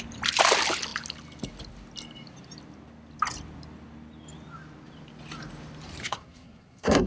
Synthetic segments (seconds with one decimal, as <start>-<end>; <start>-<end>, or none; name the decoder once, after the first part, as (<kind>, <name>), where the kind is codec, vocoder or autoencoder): 6.0-7.1 (codec, SNAC)